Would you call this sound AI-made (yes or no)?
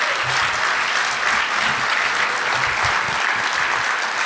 no